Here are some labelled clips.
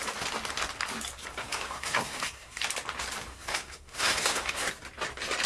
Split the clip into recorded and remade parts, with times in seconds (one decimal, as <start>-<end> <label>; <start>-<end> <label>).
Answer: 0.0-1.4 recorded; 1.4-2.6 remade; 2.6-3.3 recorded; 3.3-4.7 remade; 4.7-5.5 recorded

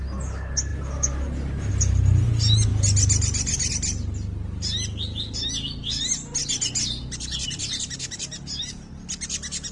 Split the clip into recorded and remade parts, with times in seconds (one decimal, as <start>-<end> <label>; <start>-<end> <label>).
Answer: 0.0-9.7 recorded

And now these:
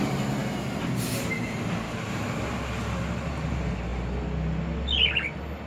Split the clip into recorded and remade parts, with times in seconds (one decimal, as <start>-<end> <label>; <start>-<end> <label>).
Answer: 0.0-5.7 recorded